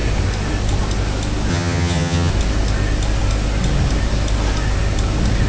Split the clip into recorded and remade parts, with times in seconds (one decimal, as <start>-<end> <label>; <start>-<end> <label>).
0.0-1.5 recorded; 1.5-2.3 remade; 2.3-5.5 recorded